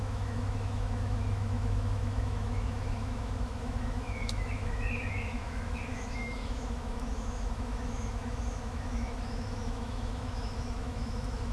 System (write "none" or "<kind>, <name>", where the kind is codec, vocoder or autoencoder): autoencoder, DAC-VAE